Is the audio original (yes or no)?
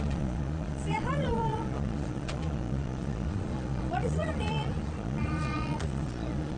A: no